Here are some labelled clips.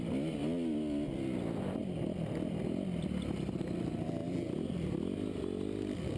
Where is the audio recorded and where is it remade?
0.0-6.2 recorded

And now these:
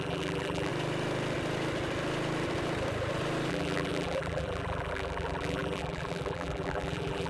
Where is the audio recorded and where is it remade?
0.0-0.7 remade; 0.7-3.5 recorded; 3.5-7.3 remade

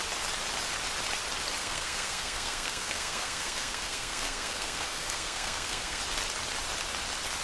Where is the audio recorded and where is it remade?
0.0-1.6 recorded; 1.6-6.0 remade; 6.0-7.4 recorded

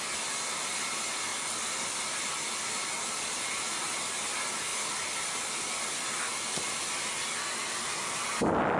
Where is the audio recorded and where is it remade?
0.0-1.3 recorded; 1.3-3.5 remade; 3.5-4.7 recorded; 4.7-6.3 remade; 6.3-8.8 recorded

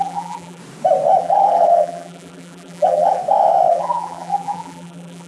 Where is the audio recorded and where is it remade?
0.0-0.6 remade; 0.6-1.2 recorded; 1.2-3.2 remade; 3.2-3.7 recorded; 3.7-5.3 remade